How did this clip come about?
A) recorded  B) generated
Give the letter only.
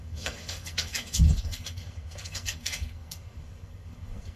B